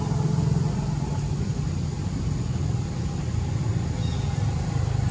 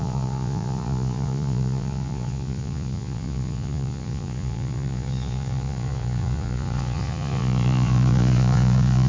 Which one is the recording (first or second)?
first